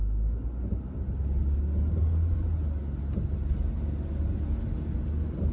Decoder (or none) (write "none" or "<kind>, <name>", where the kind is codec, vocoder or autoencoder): none